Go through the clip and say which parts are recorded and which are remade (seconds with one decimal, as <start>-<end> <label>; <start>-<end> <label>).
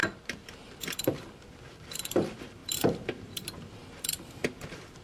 0.0-5.0 remade